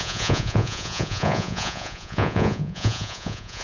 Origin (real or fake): fake